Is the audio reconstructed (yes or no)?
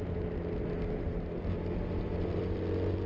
no